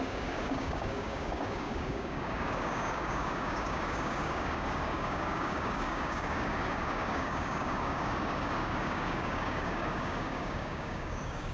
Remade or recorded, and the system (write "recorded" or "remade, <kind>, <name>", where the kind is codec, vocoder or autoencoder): remade, codec, DAC